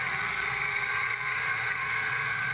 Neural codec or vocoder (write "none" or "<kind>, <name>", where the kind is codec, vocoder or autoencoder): vocoder, Vocos